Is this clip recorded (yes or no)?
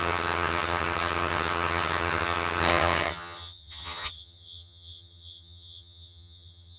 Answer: no